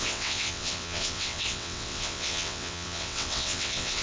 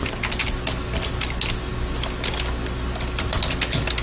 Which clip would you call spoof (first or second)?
first